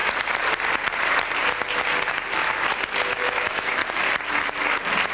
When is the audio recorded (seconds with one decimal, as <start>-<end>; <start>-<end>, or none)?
0.0-3.1; 3.8-5.1